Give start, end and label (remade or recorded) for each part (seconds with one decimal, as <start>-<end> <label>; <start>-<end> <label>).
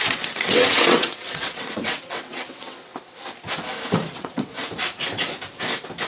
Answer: 0.0-2.9 remade; 2.9-4.1 recorded; 4.1-4.5 remade; 4.5-6.1 recorded